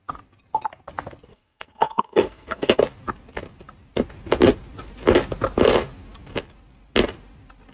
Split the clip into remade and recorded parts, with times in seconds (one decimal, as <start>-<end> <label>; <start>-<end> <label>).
0.0-1.3 recorded; 1.3-2.7 remade; 2.7-7.7 recorded